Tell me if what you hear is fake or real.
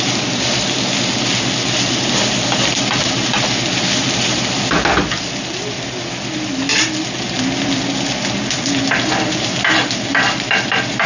real